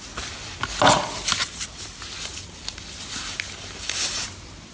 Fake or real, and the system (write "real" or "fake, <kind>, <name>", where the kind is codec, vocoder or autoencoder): real